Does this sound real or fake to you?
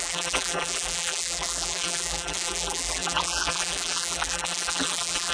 fake